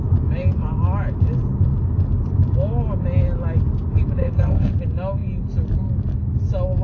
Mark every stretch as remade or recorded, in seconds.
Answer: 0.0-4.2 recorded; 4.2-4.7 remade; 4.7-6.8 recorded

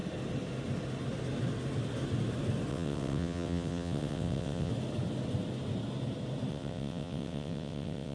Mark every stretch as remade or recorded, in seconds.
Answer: 0.0-2.7 recorded; 2.7-4.7 remade; 4.7-6.5 recorded; 6.5-8.1 remade